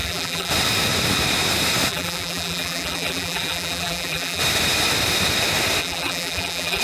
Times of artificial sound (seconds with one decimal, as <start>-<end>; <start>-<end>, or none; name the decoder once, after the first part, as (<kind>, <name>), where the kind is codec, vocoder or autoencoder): 0.0-0.5 (vocoder, BigVGAN v2); 1.9-4.4; 5.8-6.8